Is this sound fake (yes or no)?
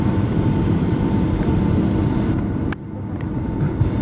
yes